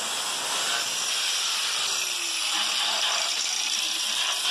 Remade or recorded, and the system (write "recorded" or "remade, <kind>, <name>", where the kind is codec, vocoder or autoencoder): recorded